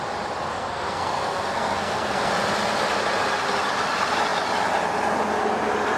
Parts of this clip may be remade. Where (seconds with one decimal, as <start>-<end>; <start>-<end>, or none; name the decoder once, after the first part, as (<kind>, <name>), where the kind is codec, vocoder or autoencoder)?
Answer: 0.5-2.3 (codec, SNAC)